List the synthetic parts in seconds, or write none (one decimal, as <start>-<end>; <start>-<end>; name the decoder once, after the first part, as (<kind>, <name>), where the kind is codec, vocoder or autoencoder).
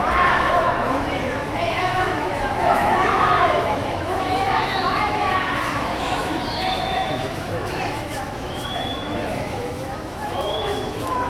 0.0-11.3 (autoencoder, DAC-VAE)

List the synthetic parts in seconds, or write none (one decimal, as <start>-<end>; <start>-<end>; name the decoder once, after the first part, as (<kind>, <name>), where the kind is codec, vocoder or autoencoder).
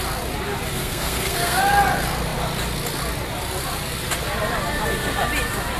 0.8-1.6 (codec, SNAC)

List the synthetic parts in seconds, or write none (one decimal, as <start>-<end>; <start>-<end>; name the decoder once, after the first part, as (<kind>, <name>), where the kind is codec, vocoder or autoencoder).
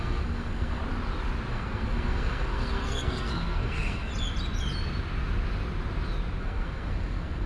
0.0-0.8 (codec, SNAC); 1.5-4.1; 6.4-7.5